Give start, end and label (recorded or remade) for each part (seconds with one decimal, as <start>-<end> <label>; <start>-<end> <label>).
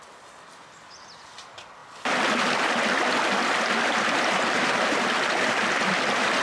0.0-6.4 recorded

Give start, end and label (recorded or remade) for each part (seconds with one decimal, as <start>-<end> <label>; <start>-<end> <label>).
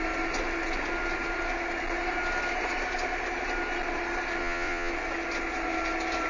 0.0-4.4 recorded; 4.4-4.9 remade; 4.9-6.3 recorded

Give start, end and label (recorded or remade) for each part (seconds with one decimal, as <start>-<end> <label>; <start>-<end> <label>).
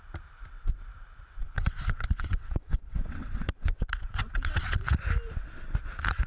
0.0-1.4 recorded; 1.4-4.6 remade; 4.6-6.3 recorded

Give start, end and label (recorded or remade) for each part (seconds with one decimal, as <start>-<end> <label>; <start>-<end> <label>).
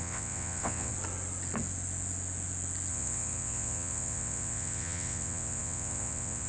0.0-0.9 remade; 0.9-2.9 recorded; 2.9-6.5 remade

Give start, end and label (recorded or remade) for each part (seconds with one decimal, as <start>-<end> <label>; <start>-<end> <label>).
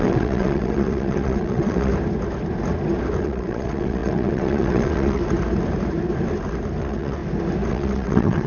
0.0-1.9 remade; 1.9-3.2 recorded; 3.2-5.2 remade; 5.2-6.8 recorded; 6.8-7.2 remade; 7.2-7.7 recorded; 7.7-8.5 remade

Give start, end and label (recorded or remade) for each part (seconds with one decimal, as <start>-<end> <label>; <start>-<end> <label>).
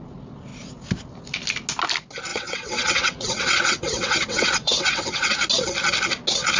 0.0-2.3 recorded; 2.3-5.5 remade; 5.5-6.6 recorded